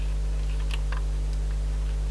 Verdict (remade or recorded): recorded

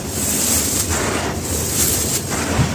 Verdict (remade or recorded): remade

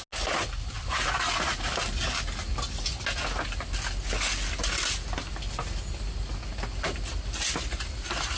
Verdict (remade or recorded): recorded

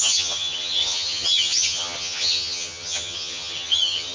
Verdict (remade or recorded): remade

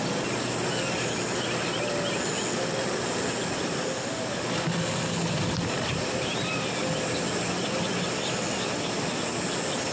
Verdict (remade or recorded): recorded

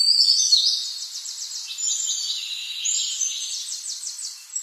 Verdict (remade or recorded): recorded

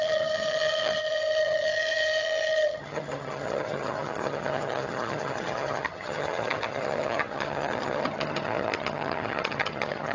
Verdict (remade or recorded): remade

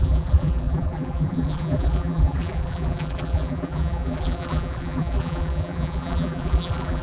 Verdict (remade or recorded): remade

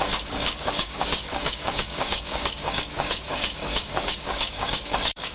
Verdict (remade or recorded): remade